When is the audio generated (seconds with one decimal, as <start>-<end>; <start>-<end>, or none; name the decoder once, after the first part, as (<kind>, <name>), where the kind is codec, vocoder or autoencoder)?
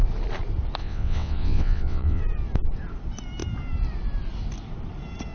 0.8-2.2 (vocoder, WaveNeXt)